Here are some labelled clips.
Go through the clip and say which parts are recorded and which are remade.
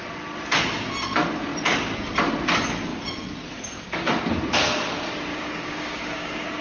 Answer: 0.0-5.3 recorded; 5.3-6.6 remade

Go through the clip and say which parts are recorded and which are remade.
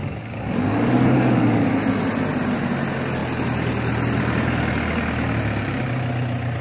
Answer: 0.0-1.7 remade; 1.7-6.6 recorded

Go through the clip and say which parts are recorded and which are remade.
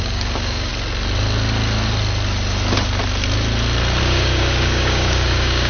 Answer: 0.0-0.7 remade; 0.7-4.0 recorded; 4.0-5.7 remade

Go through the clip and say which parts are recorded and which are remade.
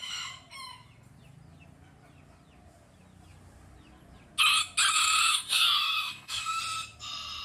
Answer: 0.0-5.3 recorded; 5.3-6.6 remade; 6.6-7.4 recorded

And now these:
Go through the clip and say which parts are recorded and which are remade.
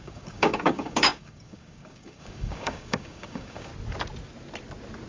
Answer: 0.0-3.7 remade; 3.7-5.1 recorded